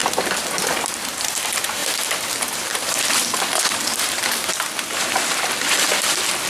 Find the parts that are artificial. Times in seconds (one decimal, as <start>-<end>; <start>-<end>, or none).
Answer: none